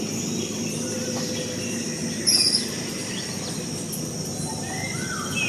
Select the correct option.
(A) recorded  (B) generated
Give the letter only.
A